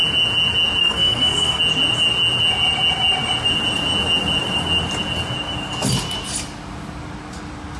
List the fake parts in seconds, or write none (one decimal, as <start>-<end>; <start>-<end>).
0.8-1.6